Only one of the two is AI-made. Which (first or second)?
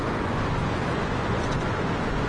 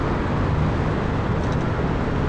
first